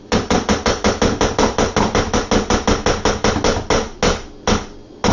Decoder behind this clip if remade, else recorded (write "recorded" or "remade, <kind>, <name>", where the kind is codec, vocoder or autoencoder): recorded